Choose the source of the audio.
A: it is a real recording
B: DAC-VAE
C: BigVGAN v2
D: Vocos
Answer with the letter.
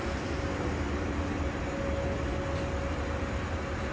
A